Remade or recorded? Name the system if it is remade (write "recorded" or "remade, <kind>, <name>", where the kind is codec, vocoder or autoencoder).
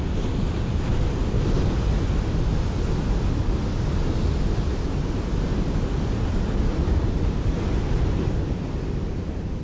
recorded